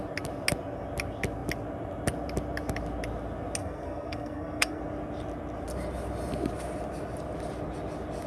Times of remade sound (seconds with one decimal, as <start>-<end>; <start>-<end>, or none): 3.6-4.8